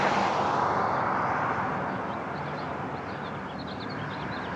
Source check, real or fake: real